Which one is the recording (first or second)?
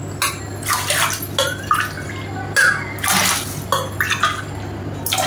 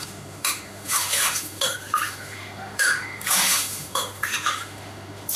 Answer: first